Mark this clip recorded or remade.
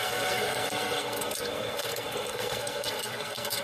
remade